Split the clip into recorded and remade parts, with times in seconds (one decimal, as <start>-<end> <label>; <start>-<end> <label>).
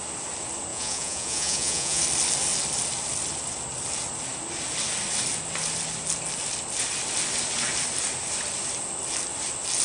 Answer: 0.0-0.7 recorded; 0.7-2.0 remade; 2.0-9.8 recorded